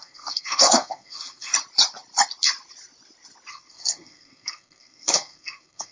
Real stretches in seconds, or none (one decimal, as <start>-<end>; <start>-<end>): 1.5-3.5